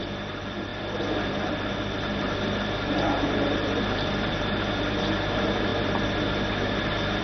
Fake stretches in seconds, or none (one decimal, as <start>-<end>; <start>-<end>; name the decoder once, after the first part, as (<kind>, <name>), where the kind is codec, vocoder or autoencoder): 0.0-0.7 (vocoder, BigVGAN v2); 2.0-5.7; 6.5-7.2